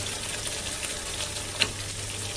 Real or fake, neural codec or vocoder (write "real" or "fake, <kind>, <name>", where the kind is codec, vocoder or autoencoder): real